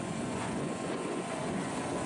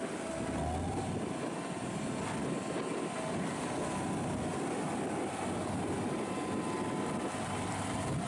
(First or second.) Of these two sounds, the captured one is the second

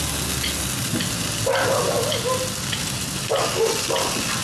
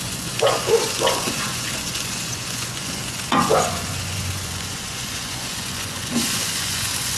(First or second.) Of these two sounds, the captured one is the first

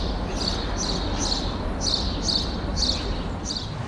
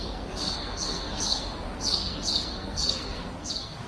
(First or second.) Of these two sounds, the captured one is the first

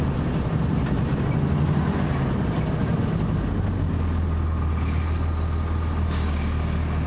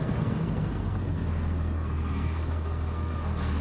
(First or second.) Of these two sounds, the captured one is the first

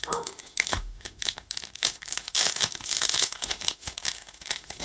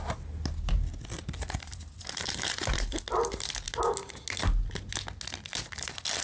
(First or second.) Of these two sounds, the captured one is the second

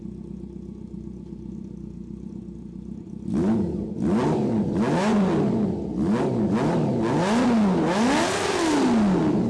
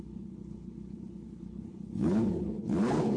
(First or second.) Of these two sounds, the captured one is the first